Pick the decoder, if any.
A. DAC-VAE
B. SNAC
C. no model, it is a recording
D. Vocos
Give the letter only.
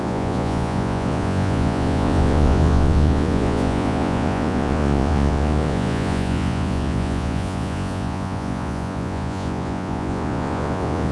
D